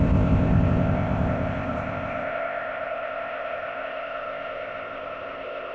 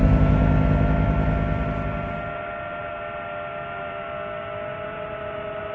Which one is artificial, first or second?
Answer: first